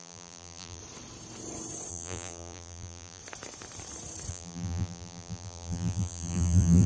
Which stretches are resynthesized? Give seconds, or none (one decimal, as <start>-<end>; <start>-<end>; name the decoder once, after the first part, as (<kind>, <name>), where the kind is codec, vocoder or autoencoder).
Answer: 0.0-0.8 (vocoder, BigVGAN v2); 1.9-3.2; 4.3-6.9